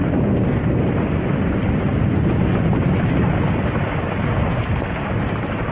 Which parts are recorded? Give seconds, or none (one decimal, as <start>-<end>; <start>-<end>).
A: 1.9-5.3